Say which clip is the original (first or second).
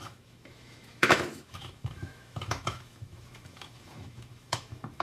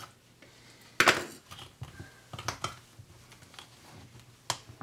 second